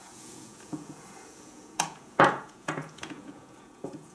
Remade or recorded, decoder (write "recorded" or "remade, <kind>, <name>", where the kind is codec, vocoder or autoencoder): remade, vocoder, Vocos